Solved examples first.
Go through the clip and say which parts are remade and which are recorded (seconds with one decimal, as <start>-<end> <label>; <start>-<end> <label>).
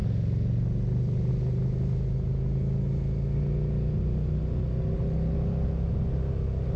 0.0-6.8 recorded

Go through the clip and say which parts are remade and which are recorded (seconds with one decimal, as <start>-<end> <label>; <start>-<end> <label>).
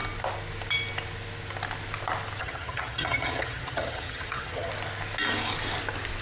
0.0-2.4 recorded; 2.4-4.7 remade; 4.7-6.2 recorded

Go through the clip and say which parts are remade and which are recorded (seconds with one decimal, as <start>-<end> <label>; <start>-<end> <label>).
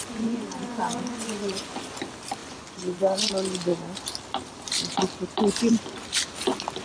0.0-2.0 remade; 2.0-2.4 recorded; 2.4-3.3 remade; 3.3-6.8 recorded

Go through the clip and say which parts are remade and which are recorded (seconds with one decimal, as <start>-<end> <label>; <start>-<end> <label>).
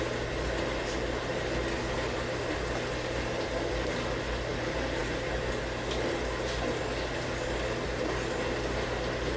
0.0-9.4 recorded